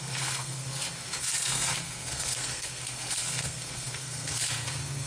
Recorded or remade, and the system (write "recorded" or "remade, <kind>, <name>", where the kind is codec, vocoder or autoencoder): remade, codec, SNAC